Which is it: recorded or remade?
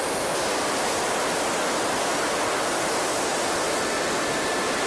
recorded